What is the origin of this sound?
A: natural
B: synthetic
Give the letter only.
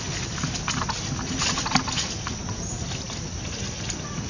A